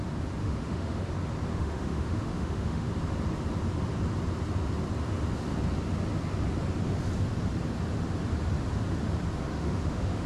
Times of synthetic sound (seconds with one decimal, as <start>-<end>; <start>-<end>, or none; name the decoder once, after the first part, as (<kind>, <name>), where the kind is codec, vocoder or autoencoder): 0.4-1.1 (autoencoder, DAC-VAE); 1.5-2.9; 9.5-10.3